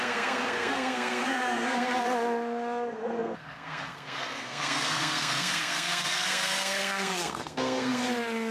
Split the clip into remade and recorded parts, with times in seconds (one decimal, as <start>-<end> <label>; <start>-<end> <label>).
0.0-8.0 remade; 8.0-8.5 recorded